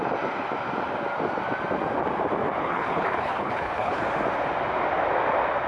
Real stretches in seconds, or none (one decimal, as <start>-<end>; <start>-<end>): 0.0-2.6; 4.0-5.7